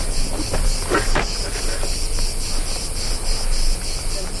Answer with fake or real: real